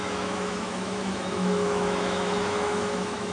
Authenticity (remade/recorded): remade